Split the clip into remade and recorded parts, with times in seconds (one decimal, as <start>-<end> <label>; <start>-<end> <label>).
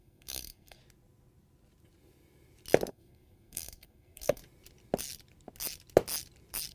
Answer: 0.0-0.8 remade; 0.8-2.9 recorded; 2.9-4.4 remade; 4.4-6.7 recorded